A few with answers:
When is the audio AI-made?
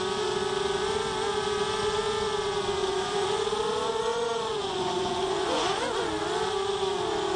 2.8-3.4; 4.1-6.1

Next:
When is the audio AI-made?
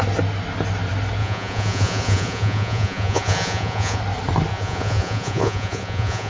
1.2-4.0; 4.5-6.3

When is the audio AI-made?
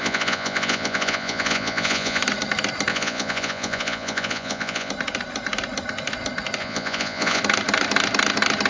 0.0-2.2; 2.9-4.9; 6.6-7.4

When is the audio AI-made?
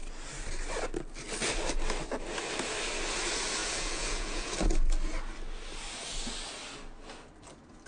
3.6-4.5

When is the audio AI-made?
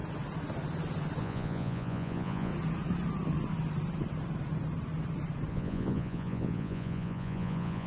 1.2-2.5; 5.5-7.9